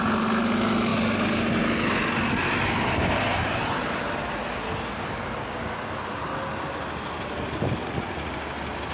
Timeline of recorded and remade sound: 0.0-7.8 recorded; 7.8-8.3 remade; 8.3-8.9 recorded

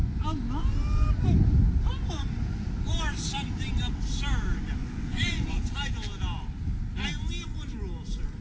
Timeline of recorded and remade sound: 0.0-4.8 recorded; 4.8-5.6 remade; 5.6-8.4 recorded

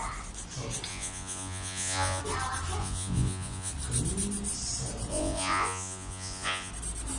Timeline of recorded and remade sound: 0.0-0.9 recorded; 0.9-2.2 remade; 2.2-2.8 recorded; 2.8-3.7 remade; 3.7-5.1 recorded; 5.1-6.7 remade; 6.7-7.2 recorded

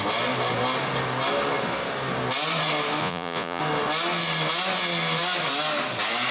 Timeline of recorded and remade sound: 0.0-3.0 recorded; 3.0-3.6 remade; 3.6-6.3 recorded

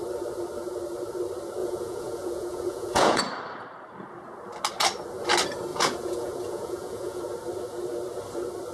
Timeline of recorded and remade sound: 0.0-1.6 recorded; 1.6-3.2 remade; 3.2-5.7 recorded; 5.7-7.2 remade; 7.2-8.7 recorded

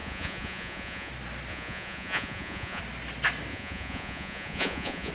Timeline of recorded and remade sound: 0.0-1.1 remade; 1.1-1.5 recorded; 1.5-2.8 remade; 2.8-3.5 recorded; 3.5-5.1 remade